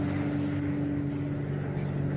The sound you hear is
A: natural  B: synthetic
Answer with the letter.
A